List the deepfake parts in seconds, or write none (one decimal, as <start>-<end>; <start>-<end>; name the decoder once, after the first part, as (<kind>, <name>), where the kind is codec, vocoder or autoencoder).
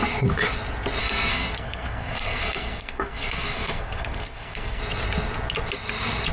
1.0-4.8 (codec, SNAC)